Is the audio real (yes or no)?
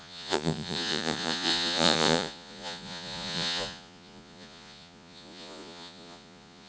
no